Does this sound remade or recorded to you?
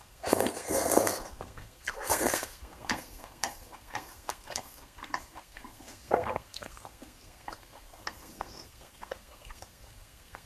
remade